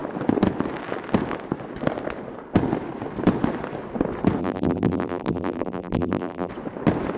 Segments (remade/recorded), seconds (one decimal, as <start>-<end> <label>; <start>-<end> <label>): 0.0-4.4 recorded; 4.4-6.5 remade; 6.5-7.2 recorded